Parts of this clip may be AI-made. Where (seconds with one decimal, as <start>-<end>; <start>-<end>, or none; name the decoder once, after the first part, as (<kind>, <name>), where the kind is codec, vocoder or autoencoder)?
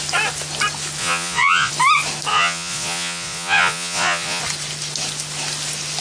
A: 1.0-1.7 (vocoder, Vocos); 2.3-4.4